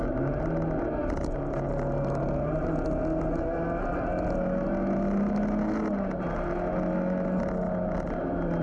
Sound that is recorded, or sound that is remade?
recorded